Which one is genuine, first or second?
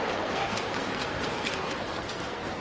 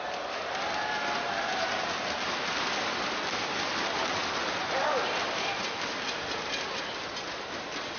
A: second